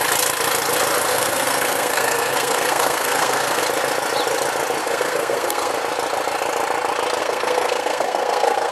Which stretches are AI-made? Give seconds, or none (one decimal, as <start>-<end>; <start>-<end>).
1.1-3.6; 4.8-5.7; 7.2-8.7